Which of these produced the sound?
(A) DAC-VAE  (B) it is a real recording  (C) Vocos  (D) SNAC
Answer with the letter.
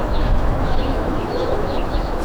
A